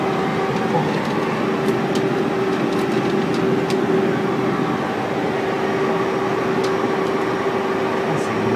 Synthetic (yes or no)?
no